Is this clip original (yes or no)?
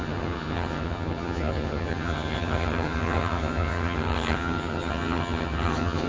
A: no